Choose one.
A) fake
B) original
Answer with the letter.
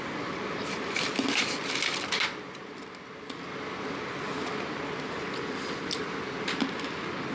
B